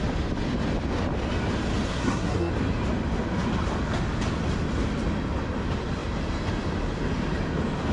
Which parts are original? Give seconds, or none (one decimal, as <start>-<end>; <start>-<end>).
0.0-1.9; 2.5-7.9